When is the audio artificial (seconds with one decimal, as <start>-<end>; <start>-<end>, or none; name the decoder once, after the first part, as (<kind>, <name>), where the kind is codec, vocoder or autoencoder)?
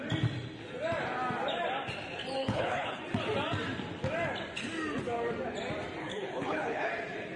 2.4-3.0 (codec, HILCodec); 6.0-6.9